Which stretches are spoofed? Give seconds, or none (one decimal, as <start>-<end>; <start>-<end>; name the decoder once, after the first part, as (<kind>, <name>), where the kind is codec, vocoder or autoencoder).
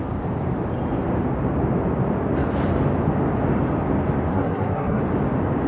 4.3-5.0 (codec, SNAC)